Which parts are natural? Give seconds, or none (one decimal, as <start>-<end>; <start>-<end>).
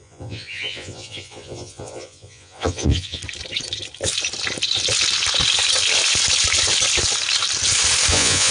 3.2-8.1